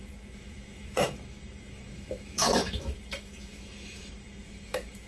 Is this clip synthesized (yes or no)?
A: yes